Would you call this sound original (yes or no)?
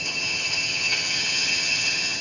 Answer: no